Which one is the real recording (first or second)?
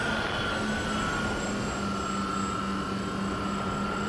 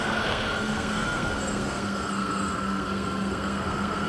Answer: first